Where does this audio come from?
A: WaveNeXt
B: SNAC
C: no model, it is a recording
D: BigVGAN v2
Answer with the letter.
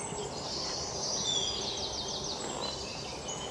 C